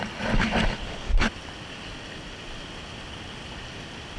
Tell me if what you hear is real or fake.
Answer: real